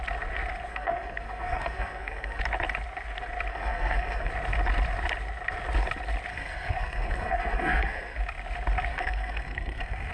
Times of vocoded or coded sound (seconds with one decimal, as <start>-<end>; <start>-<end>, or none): 0.7-2.4; 3.5-4.3; 6.3-8.2; 8.9-10.1